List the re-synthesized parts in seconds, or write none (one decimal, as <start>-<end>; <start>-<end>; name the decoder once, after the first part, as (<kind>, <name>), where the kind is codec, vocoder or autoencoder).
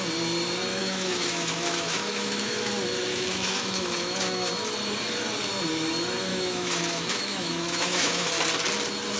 0.8-2.7 (autoencoder, DAC-VAE); 3.1-4.5; 6.3-8.3